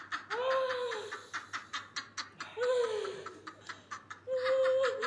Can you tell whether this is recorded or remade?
recorded